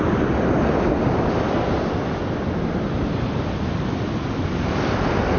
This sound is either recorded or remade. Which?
recorded